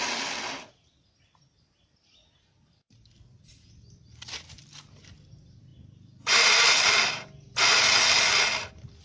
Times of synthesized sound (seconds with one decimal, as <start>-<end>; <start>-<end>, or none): none